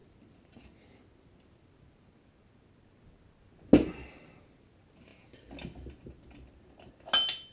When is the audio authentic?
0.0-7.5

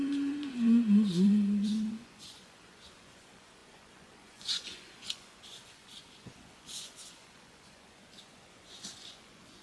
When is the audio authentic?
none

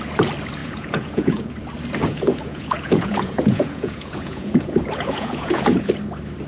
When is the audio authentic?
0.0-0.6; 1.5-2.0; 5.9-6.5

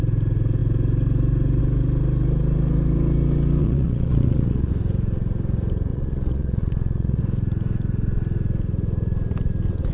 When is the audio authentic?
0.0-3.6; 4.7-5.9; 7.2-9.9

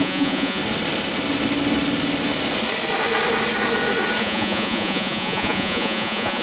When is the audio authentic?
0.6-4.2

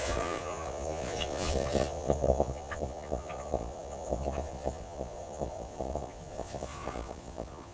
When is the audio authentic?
none